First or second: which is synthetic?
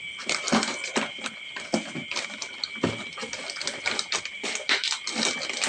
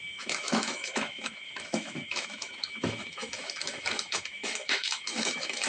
second